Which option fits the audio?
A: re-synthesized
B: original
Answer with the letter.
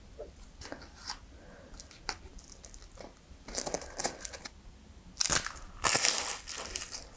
B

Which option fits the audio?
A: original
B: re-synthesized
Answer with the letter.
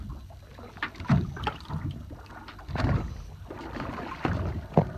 A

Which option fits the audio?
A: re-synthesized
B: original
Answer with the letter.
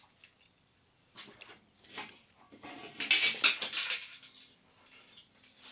B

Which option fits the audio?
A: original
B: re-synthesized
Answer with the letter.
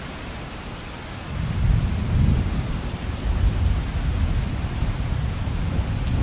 A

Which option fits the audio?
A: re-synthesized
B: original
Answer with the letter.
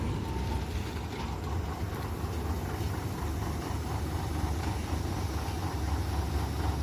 B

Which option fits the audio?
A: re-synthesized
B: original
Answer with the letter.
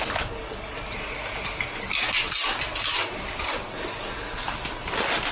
B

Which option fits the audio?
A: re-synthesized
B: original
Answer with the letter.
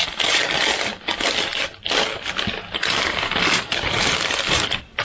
B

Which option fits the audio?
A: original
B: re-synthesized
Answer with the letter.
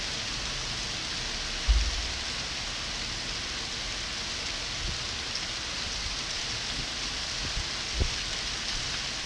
A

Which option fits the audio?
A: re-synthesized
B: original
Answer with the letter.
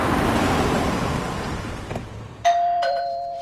A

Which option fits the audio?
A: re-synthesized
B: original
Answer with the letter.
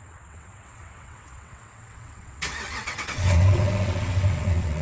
A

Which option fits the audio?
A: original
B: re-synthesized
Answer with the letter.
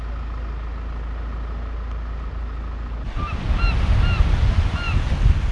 A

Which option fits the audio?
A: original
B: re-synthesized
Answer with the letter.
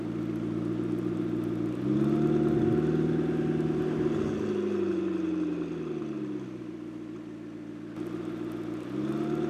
A